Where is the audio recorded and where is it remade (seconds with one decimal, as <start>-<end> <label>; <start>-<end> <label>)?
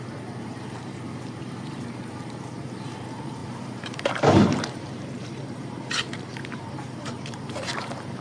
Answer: 0.0-8.2 remade